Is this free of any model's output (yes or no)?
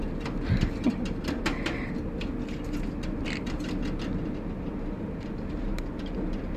yes